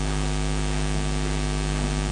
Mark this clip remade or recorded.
recorded